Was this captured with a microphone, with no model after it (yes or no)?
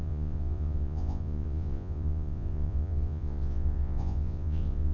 no